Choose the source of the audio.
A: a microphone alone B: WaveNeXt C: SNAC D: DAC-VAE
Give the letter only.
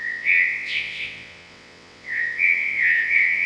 B